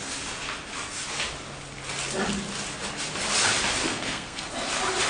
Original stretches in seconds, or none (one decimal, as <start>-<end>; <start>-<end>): 0.0-3.9; 4.5-5.1